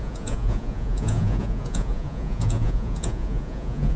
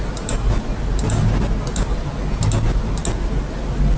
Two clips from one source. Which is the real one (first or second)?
second